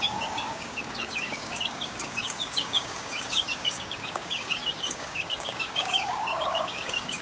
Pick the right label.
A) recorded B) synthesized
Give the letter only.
B